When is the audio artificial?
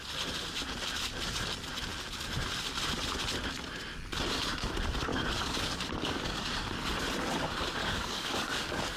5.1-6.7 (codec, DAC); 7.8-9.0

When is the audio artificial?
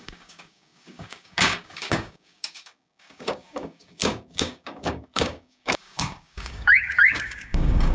0.0-7.9 (codec, DAC)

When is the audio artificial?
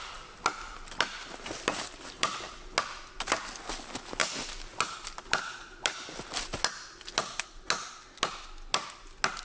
none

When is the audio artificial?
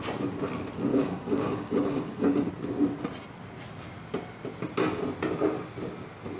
0.9-2.5 (codec, DAC)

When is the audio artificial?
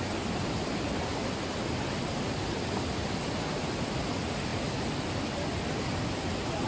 none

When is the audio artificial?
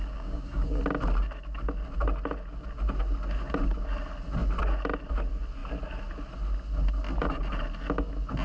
0.0-0.8 (codec, DAC)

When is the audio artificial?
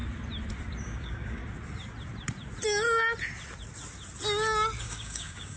0.8-1.4 (codec, DAC); 4.8-5.6